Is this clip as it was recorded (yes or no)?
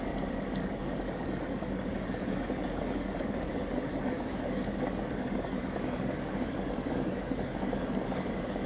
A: no